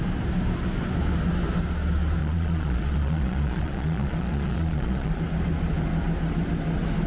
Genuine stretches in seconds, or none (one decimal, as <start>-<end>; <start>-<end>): 0.0-2.2; 5.2-7.1